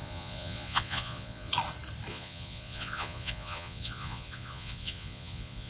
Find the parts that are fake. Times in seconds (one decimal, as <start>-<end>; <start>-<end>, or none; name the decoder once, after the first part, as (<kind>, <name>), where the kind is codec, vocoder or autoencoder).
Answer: 0.0-1.5 (vocoder, Vocos); 2.1-5.7